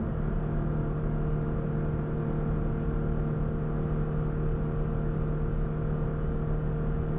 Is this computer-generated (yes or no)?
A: no